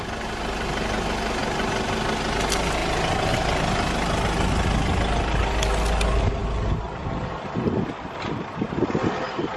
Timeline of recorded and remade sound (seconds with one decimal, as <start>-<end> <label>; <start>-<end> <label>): 0.0-1.4 recorded; 1.4-2.1 remade; 2.1-9.6 recorded